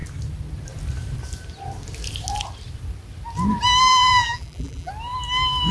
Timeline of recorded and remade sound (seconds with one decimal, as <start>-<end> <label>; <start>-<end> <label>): 0.0-3.8 recorded; 3.8-4.9 remade; 4.9-5.7 recorded